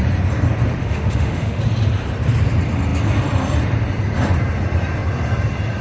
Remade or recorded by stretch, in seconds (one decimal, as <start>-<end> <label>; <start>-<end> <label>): 0.0-0.8 recorded; 0.8-1.6 remade; 1.6-5.8 recorded